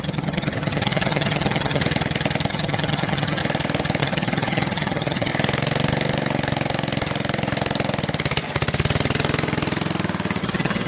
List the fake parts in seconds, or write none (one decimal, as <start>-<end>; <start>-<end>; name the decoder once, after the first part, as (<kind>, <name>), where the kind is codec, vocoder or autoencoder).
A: 0.0-1.8 (vocoder, HiFi-GAN); 2.5-3.4; 4.0-5.3; 10.4-10.9